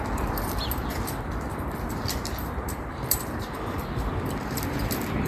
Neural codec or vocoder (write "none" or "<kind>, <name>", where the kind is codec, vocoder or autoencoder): vocoder, BigVGAN v2